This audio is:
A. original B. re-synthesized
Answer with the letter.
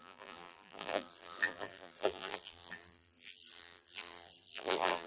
B